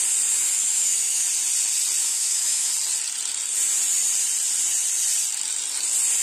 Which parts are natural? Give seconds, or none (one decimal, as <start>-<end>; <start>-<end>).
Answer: 0.0-0.6; 1.2-2.0; 2.7-6.2